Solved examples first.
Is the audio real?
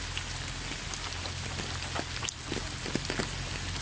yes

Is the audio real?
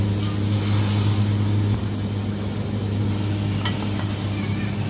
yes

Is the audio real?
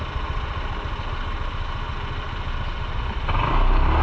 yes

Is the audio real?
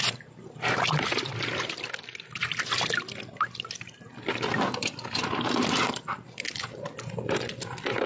yes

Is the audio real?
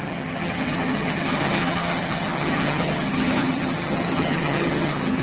no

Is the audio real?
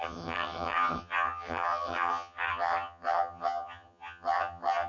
no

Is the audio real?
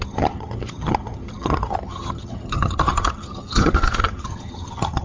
no